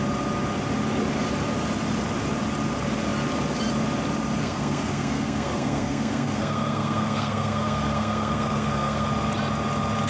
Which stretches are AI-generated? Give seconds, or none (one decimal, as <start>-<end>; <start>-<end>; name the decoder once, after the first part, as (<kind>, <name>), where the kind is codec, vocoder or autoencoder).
4.4-9.1 (codec, SNAC)